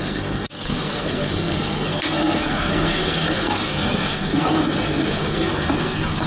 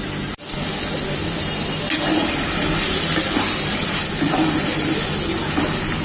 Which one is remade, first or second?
first